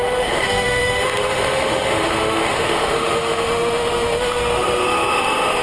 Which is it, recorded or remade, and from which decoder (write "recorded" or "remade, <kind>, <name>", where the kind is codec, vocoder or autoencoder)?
remade, autoencoder, DAC-VAE